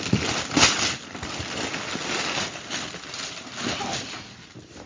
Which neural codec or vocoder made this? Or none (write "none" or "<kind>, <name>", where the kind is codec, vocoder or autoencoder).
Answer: none